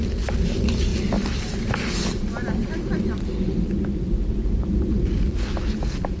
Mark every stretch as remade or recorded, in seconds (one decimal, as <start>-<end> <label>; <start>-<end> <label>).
0.0-6.2 recorded